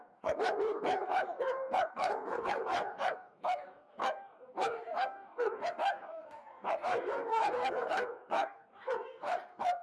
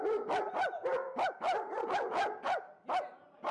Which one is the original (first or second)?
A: second